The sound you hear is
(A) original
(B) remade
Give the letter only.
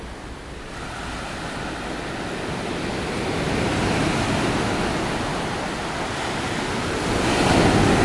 A